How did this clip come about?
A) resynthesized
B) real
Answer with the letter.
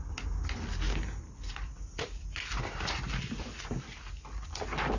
B